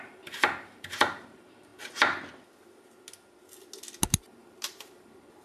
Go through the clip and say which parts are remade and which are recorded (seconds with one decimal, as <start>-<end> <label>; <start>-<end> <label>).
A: 0.0-1.7 remade; 1.7-4.2 recorded; 4.2-5.4 remade